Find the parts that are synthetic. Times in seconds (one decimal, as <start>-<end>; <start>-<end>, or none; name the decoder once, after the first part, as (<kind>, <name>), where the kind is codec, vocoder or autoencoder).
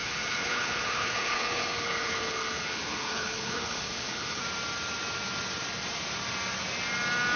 0.0-4.4 (codec, HILCodec)